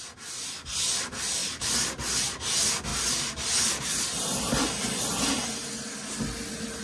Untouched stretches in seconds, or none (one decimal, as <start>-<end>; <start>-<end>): 0.0-6.8